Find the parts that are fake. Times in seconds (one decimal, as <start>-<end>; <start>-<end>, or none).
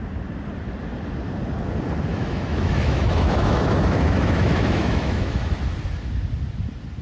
2.1-5.6